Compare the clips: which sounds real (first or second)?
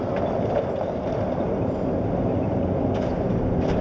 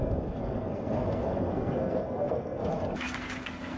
first